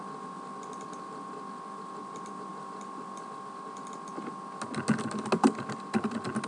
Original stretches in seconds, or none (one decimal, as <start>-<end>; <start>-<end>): 0.0-6.5